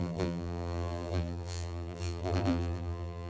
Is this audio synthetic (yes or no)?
yes